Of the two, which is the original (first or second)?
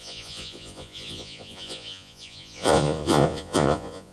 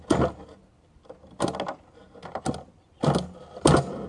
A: second